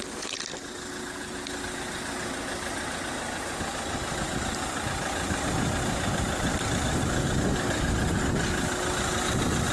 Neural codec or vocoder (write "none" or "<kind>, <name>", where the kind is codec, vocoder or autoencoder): none